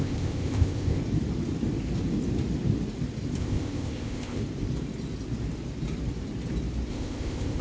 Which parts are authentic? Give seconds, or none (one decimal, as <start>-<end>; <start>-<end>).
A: 1.0-3.4; 4.4-6.9